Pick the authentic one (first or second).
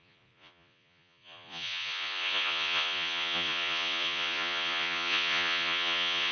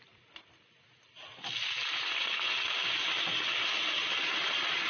second